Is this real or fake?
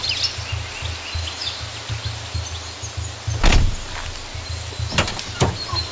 real